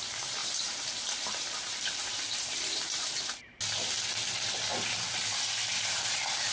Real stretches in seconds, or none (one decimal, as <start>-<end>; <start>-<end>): 0.0-0.4; 3.1-6.5